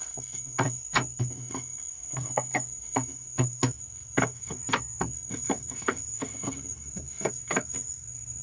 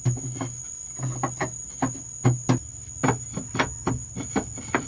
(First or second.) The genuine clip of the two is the second